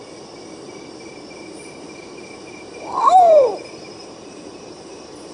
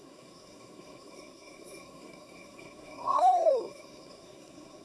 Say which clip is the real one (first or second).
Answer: first